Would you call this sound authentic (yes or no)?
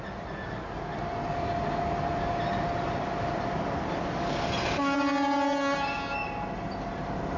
yes